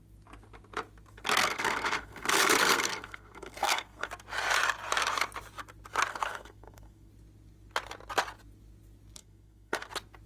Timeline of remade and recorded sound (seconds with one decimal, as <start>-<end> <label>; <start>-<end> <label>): 0.0-1.4 recorded; 1.4-4.1 remade; 4.1-6.1 recorded; 6.1-7.1 remade; 7.1-9.2 recorded; 9.2-9.9 remade; 9.9-10.3 recorded